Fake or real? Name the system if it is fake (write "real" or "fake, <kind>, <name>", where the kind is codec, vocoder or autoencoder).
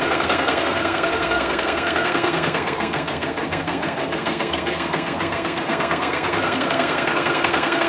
fake, codec, SNAC